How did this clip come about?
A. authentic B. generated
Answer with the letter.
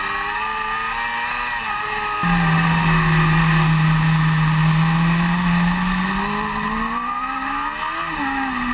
A